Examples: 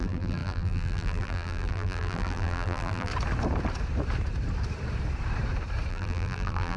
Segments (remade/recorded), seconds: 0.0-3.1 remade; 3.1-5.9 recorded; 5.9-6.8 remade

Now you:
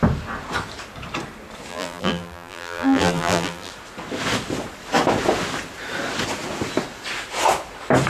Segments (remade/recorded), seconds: 0.0-1.7 recorded; 1.7-3.7 remade; 3.7-8.1 recorded